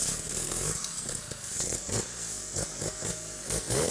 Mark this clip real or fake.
fake